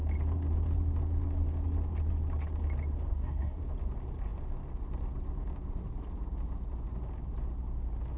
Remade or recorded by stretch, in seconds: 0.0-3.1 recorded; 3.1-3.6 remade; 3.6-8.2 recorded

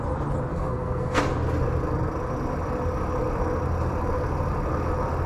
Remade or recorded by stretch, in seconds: 0.0-0.5 recorded; 0.5-1.2 remade; 1.2-5.3 recorded

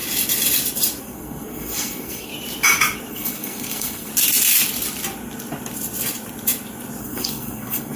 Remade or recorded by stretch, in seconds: 0.0-1.0 recorded; 1.0-2.3 remade; 2.3-3.1 recorded; 3.1-4.1 remade; 4.1-7.0 recorded; 7.0-8.0 remade

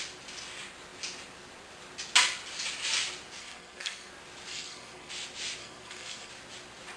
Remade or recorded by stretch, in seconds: 0.0-3.4 recorded; 3.4-4.1 remade; 4.1-4.5 recorded; 4.5-5.1 remade; 5.1-5.6 recorded; 5.6-6.3 remade; 6.3-7.0 recorded

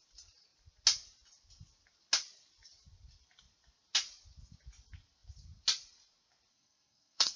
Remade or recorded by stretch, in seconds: 0.0-6.5 recorded; 6.5-7.4 remade

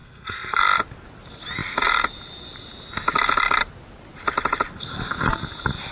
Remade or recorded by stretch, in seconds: 0.0-0.6 remade; 0.6-5.9 recorded

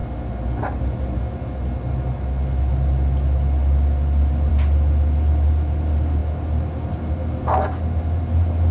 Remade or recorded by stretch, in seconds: 0.0-8.7 recorded

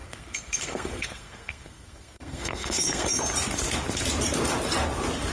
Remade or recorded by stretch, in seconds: 0.0-3.2 remade; 3.2-5.3 recorded